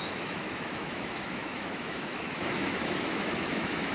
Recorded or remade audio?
remade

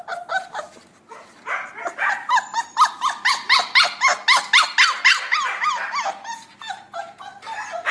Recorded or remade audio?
recorded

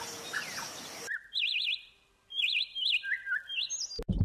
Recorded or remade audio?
recorded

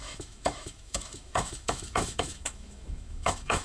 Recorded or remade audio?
remade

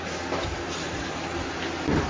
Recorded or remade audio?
recorded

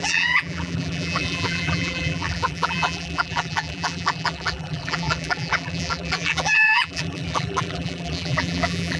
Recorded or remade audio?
remade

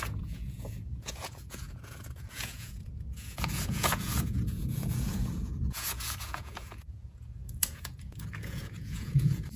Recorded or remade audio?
remade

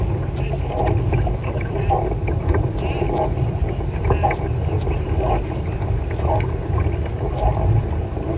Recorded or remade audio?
recorded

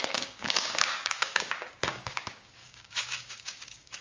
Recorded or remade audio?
remade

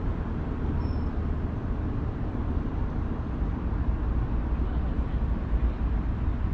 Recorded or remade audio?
recorded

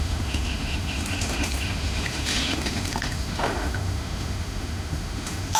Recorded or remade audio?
remade